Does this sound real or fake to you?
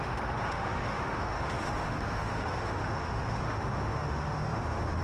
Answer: fake